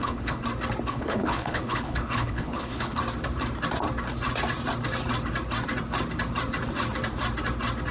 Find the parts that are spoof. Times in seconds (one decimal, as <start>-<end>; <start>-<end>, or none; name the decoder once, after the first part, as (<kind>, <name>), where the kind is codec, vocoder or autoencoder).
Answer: 0.0-0.4 (codec, HILCodec); 0.9-3.0